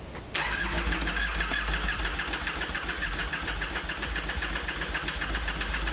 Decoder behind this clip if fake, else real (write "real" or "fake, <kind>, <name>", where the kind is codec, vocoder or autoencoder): real